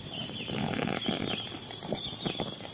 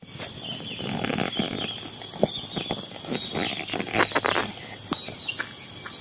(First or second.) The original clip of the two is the second